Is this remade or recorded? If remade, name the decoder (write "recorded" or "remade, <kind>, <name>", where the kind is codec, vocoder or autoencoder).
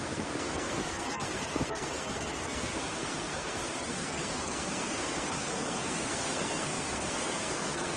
remade, codec, SNAC